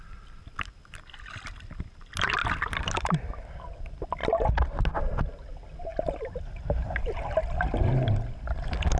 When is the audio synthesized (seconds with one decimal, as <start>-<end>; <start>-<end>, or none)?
none